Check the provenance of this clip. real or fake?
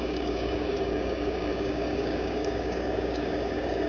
fake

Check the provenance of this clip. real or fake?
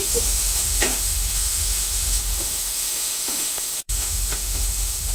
fake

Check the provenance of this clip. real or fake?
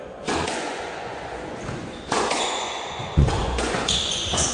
fake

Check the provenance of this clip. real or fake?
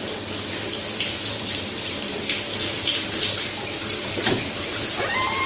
fake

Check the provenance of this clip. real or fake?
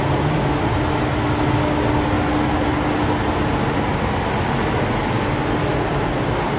real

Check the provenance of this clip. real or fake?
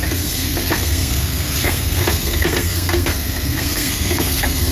fake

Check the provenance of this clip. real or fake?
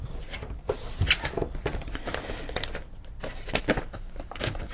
real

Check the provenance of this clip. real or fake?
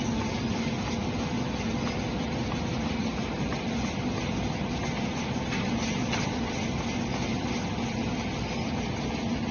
real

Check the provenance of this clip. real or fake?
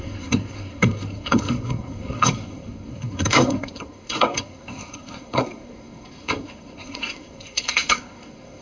fake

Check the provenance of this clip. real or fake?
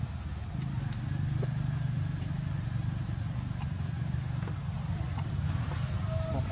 real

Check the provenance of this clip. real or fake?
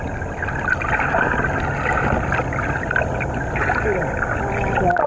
real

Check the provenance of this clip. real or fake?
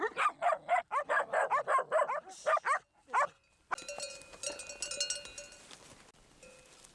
real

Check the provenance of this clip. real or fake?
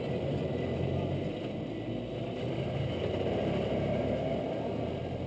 real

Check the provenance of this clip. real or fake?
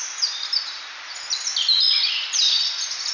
real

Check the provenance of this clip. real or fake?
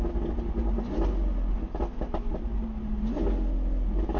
real